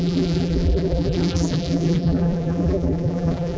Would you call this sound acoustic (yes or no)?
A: no